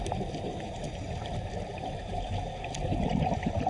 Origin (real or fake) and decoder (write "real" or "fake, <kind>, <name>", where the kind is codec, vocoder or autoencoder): real